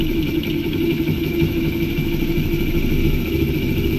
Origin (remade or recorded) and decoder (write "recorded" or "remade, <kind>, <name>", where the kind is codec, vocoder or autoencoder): remade, autoencoder, DAC-VAE